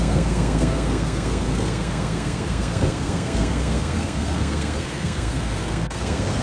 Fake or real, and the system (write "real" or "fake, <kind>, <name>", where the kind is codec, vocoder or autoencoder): fake, codec, SNAC